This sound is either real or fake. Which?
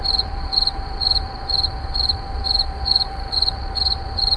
fake